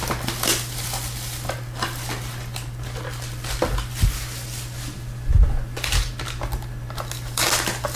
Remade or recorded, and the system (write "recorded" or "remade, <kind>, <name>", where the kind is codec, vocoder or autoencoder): recorded